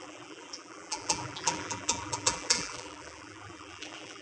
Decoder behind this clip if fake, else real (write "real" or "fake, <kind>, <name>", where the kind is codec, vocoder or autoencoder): fake, vocoder, BigVGAN v2